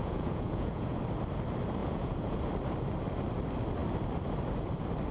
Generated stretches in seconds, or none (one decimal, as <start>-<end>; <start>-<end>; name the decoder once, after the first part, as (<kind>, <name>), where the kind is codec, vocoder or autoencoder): 0.0-1.0 (vocoder, Vocos); 1.8-2.4